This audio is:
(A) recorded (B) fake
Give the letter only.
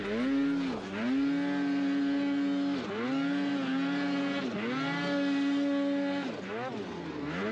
A